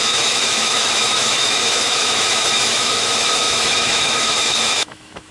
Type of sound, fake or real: fake